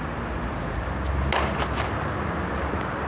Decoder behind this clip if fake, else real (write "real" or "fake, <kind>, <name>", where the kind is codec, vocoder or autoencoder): real